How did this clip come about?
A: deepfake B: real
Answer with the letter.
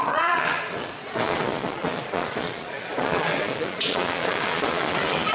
A